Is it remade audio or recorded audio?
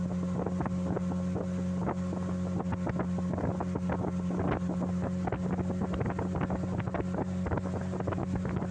recorded